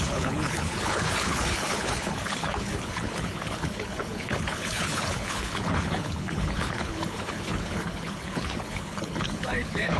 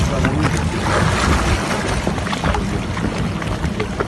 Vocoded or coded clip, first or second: first